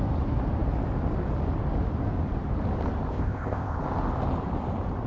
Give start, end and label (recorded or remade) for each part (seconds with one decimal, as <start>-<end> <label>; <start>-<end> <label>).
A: 0.0-3.1 recorded; 3.1-3.8 remade; 3.8-5.1 recorded